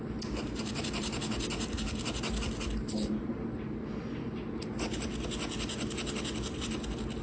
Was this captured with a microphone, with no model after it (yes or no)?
yes